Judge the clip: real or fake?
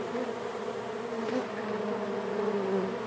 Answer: real